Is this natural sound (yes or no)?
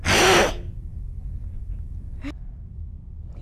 yes